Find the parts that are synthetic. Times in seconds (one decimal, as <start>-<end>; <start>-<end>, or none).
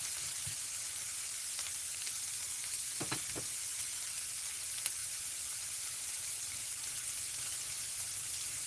5.0-6.6; 7.5-8.7